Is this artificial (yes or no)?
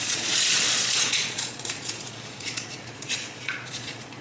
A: yes